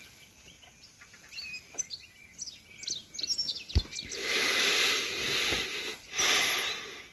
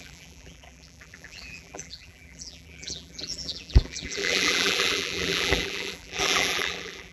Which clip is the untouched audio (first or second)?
first